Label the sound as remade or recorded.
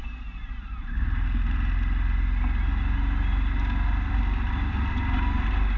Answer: recorded